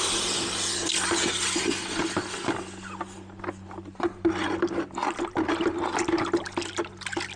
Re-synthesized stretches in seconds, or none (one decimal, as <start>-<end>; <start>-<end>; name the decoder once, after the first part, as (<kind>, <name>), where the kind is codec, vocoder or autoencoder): none